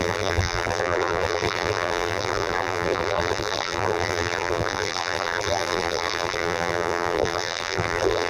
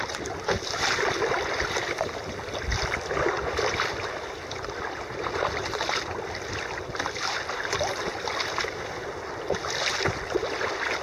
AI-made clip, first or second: first